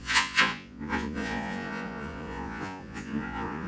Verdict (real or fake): fake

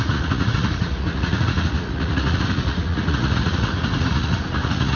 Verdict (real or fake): fake